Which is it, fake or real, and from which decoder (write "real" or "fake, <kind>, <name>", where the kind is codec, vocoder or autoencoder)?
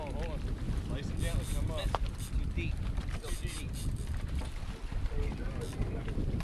real